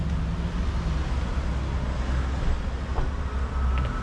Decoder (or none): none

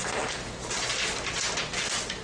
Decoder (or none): none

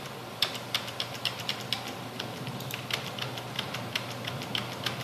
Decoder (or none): none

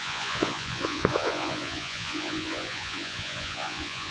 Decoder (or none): vocoder, Vocos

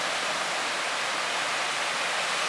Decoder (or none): none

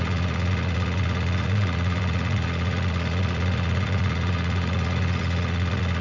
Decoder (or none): vocoder, Vocos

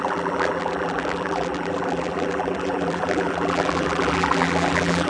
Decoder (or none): vocoder, BigVGAN v2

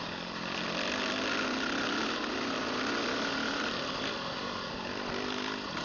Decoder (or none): none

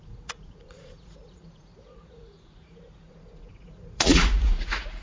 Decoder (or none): vocoder, Vocos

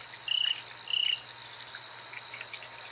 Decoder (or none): none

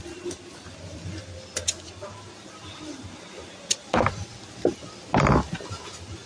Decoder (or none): none